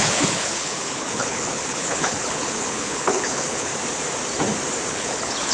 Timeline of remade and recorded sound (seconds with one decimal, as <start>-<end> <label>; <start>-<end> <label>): 0.0-3.7 remade; 3.7-4.9 recorded; 4.9-5.5 remade